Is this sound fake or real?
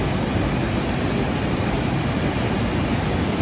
real